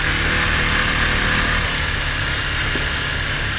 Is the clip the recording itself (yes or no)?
yes